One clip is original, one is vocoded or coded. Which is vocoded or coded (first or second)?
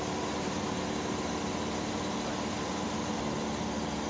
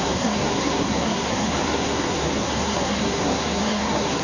second